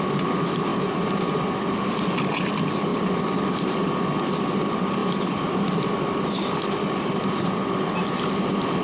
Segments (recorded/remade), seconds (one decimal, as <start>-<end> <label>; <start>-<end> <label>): 0.0-2.9 recorded; 2.9-3.8 remade; 3.8-5.0 recorded; 5.0-5.8 remade; 5.8-8.8 recorded